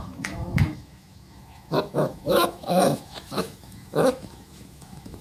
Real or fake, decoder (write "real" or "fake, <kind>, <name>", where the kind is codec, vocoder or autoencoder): fake, autoencoder, DAC-VAE